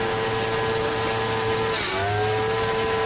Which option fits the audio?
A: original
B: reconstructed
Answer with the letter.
A